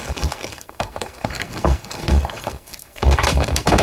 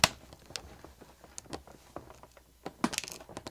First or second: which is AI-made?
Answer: first